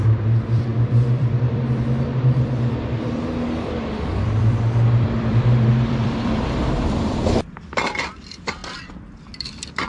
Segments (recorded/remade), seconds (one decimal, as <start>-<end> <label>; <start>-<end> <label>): 0.0-8.6 remade; 8.6-9.9 recorded